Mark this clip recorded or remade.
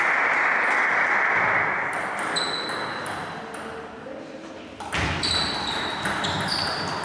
recorded